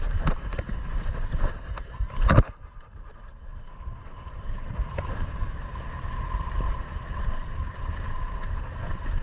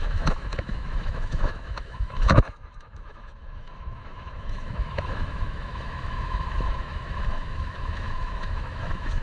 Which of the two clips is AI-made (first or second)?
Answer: second